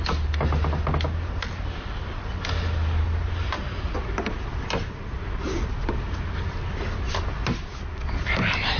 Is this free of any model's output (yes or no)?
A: yes